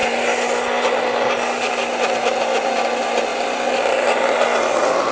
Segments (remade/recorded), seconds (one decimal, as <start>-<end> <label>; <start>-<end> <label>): 0.0-5.1 recorded